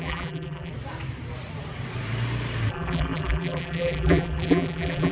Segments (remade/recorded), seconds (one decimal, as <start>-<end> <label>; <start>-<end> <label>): 0.0-0.7 remade; 0.7-2.7 recorded; 2.7-5.1 remade